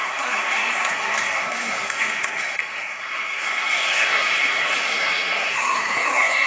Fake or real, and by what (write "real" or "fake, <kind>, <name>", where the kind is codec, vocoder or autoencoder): fake, codec, SNAC